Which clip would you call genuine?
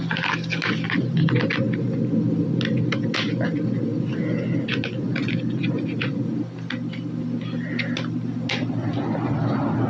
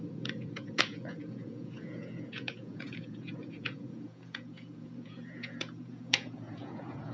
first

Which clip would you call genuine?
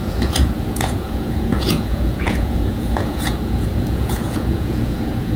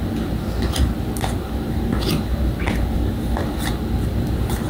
second